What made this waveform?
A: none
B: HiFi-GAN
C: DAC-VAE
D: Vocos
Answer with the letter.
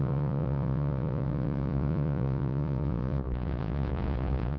D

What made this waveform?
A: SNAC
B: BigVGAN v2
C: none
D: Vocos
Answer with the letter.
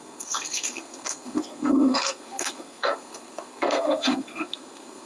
A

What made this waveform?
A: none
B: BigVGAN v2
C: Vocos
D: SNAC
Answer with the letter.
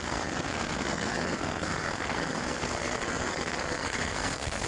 D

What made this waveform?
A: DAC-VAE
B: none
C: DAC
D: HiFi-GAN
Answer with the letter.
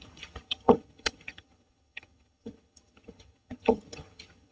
D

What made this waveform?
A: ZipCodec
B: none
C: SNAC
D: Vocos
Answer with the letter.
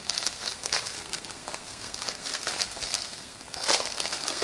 C